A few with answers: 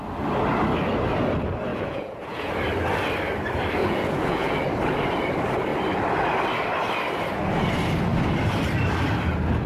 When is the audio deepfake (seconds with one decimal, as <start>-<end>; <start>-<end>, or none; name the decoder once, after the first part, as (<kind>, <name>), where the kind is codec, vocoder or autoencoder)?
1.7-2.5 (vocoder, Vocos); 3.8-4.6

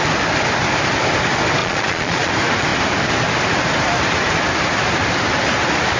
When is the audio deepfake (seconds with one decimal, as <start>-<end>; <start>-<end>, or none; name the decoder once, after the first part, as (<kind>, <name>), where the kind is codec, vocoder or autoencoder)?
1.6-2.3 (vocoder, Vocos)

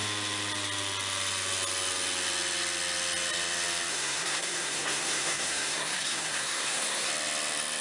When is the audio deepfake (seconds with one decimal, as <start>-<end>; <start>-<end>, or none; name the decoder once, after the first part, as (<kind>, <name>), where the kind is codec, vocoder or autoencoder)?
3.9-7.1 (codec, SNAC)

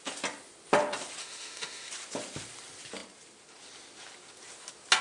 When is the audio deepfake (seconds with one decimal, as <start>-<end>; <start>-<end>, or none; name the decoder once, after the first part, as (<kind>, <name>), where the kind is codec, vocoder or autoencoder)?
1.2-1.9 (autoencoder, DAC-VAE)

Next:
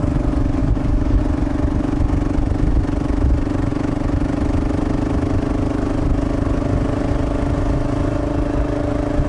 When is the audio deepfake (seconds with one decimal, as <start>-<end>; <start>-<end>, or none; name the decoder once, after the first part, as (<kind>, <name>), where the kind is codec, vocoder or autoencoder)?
0.6-1.2 (codec, DAC)

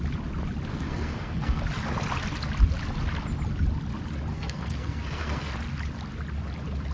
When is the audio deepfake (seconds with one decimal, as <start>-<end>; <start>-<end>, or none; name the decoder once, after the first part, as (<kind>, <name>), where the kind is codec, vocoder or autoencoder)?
0.7-1.6 (codec, SNAC); 4.3-5.5

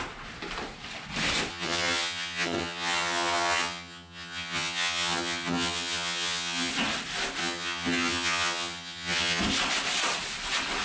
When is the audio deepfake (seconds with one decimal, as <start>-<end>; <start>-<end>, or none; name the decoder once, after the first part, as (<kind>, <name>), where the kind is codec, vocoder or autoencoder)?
1.5-6.7 (vocoder, HiFi-GAN); 7.4-9.4

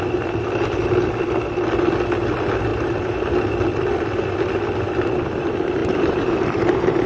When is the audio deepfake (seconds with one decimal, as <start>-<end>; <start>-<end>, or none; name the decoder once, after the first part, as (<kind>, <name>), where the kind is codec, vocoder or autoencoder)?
2.7-3.3 (vocoder, BigVGAN v2); 5.8-7.1